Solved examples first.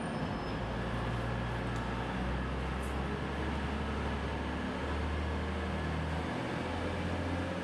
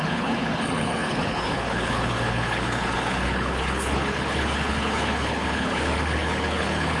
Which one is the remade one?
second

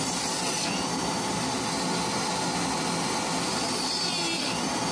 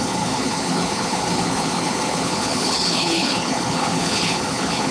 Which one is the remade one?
second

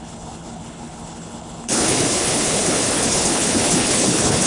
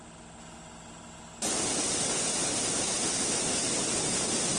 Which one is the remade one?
first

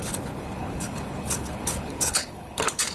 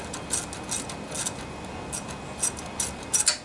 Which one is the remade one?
first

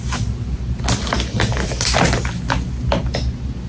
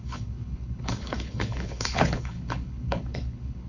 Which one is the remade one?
second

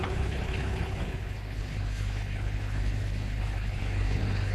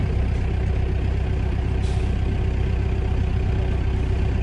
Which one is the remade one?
first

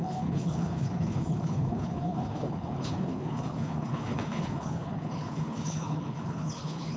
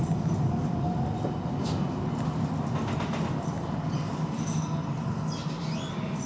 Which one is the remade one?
first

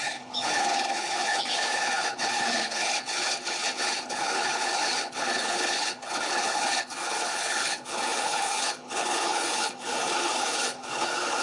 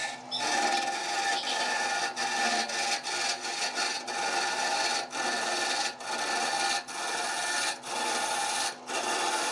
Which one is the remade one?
first